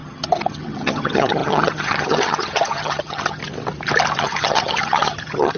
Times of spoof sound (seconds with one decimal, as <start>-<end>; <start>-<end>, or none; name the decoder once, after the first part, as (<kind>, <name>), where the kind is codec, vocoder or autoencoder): 0.0-3.4 (vocoder, HiFi-GAN); 4.2-5.6